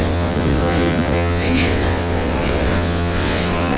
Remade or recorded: remade